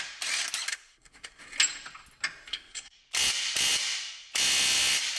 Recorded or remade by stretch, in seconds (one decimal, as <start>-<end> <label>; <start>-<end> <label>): 0.0-0.7 recorded; 0.7-1.4 remade; 1.4-2.5 recorded; 2.5-3.0 remade; 3.0-5.2 recorded